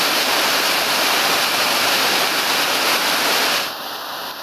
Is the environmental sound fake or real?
real